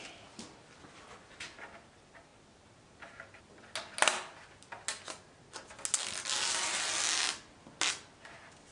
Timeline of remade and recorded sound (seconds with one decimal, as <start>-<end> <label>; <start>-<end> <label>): 0.0-8.7 recorded